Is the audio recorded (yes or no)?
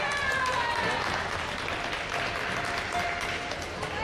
yes